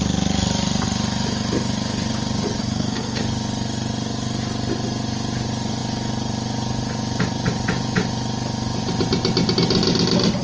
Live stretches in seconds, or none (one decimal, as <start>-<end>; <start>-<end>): 0.0-2.6; 3.2-10.4